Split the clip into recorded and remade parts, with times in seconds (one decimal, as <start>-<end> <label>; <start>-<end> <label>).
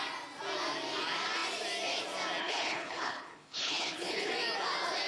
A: 0.0-2.4 recorded; 2.4-4.3 remade; 4.3-5.1 recorded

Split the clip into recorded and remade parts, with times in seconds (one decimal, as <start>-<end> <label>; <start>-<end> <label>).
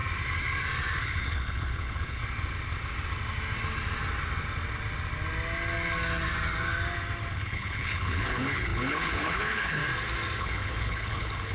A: 0.0-1.0 recorded; 1.0-2.2 remade; 2.2-7.3 recorded; 7.3-9.8 remade; 9.8-10.4 recorded; 10.4-11.5 remade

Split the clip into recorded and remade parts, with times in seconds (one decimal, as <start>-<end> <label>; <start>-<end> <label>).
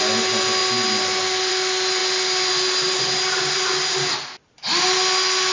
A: 0.0-5.5 recorded